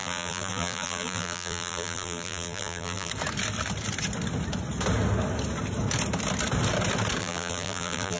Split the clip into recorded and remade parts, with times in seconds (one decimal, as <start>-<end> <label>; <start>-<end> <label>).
0.0-3.1 remade; 3.1-7.2 recorded; 7.2-8.2 remade